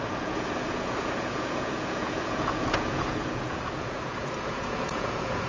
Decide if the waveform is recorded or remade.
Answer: remade